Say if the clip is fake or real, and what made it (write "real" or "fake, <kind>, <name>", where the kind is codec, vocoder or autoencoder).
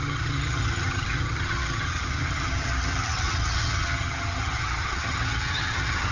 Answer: fake, vocoder, HiFi-GAN